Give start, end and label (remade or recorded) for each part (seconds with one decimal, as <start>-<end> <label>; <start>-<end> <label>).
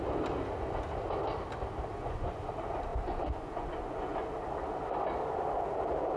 0.0-1.9 recorded; 1.9-2.5 remade; 2.5-2.9 recorded; 2.9-4.3 remade; 4.3-6.2 recorded